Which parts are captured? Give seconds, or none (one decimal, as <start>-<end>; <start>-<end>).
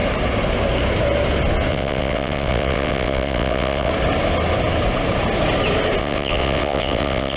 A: 0.0-1.7; 3.9-6.0